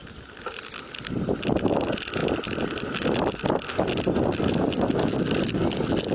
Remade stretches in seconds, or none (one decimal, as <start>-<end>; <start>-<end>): none